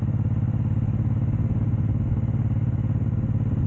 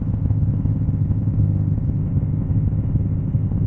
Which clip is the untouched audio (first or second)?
first